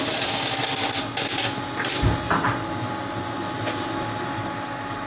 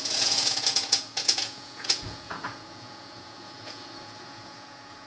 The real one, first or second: first